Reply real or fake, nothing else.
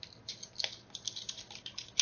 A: real